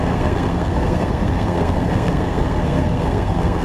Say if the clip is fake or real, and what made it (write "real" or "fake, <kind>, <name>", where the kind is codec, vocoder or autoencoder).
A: fake, codec, SNAC